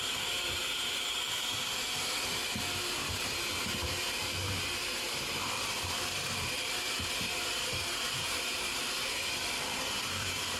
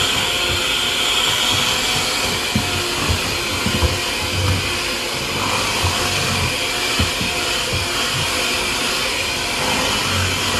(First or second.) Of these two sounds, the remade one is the first